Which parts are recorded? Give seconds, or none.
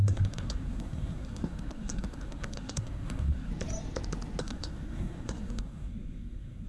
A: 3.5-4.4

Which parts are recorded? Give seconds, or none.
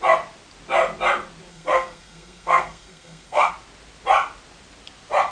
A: 0.0-1.5; 3.5-5.3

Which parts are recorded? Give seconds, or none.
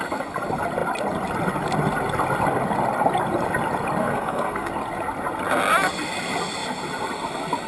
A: 0.0-4.0; 4.7-7.7